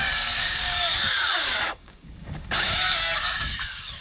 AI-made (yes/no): yes